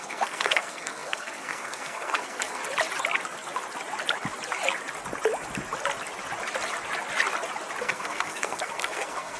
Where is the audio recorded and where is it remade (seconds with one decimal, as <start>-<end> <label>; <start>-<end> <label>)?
0.0-2.6 remade; 2.6-7.8 recorded; 7.8-9.4 remade